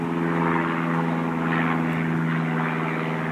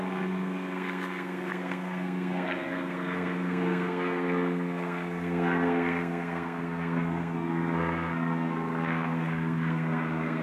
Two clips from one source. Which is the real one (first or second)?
first